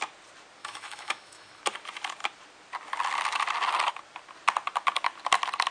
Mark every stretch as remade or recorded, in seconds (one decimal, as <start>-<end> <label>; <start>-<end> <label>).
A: 0.0-0.6 recorded; 0.6-1.6 remade; 1.6-5.7 recorded